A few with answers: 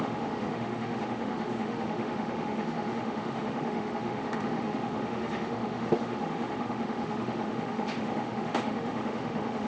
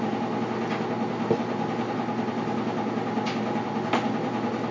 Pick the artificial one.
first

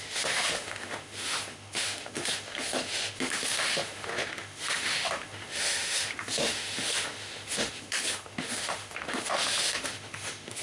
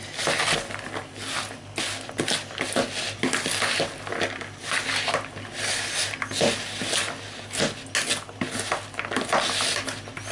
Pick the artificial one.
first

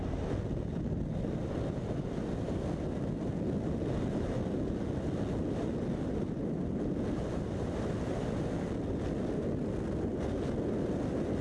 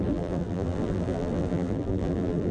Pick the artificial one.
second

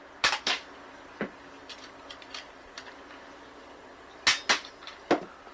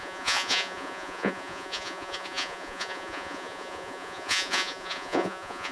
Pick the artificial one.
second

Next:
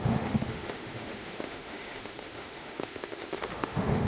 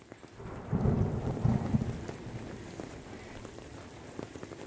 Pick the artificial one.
first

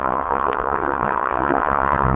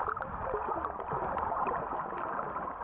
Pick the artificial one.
first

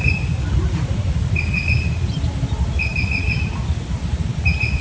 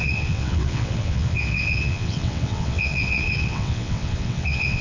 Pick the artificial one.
second